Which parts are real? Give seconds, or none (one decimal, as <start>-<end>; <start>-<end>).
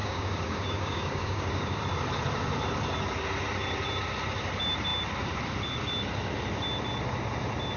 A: 1.8-7.8